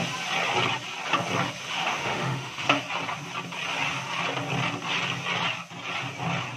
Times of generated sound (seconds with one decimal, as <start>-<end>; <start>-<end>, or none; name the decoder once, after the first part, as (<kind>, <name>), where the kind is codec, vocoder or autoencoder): 1.6-2.8 (autoencoder, DAC-VAE)